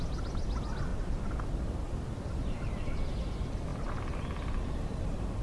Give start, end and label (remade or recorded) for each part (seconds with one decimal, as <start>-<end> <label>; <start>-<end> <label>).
0.0-0.9 recorded; 0.9-2.7 remade; 2.7-3.7 recorded; 3.7-5.4 remade